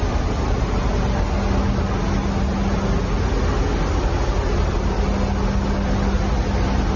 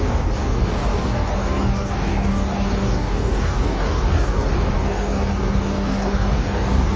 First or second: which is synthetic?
second